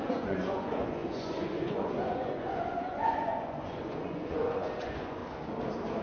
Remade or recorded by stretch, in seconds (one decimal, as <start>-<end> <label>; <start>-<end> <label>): 0.0-5.2 remade; 5.2-6.0 recorded